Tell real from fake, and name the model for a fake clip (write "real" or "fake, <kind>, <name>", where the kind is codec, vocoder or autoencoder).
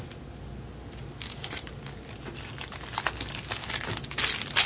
real